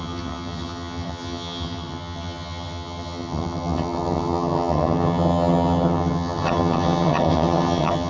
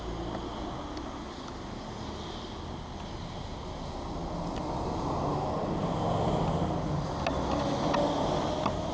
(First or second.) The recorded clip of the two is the second